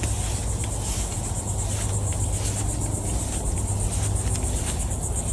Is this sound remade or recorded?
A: recorded